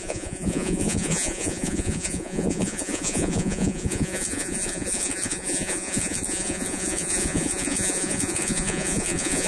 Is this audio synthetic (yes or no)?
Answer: yes